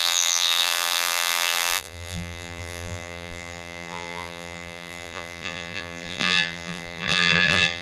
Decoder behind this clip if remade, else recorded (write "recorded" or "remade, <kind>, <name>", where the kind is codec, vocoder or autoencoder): remade, vocoder, BigVGAN v2